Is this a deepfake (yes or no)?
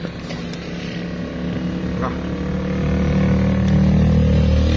no